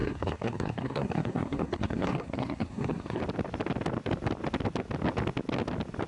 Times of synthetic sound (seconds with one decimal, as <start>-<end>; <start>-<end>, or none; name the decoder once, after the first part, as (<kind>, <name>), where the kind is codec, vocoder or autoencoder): 0.0-3.2 (codec, SNAC)